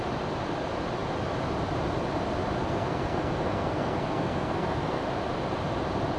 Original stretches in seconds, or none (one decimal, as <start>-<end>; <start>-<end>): 0.0-2.6; 5.0-6.2

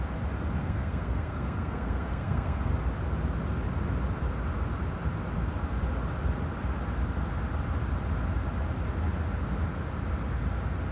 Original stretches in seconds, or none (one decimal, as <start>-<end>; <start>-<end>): 0.0-0.6; 2.7-10.9